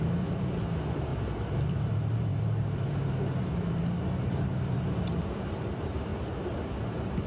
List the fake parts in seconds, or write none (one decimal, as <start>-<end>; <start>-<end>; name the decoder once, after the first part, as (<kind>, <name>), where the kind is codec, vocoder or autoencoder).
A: 0.0-7.3 (vocoder, BigVGAN v2)